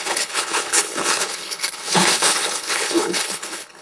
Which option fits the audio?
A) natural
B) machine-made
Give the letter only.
B